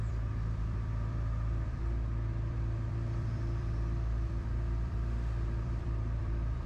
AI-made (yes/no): yes